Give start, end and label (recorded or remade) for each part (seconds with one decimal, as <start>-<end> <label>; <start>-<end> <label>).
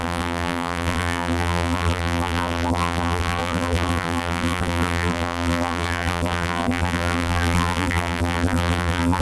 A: 0.0-9.2 remade